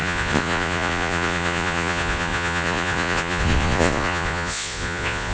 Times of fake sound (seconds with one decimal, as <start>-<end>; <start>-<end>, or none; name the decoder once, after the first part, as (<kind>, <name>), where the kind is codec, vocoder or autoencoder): 0.0-5.3 (vocoder, Vocos)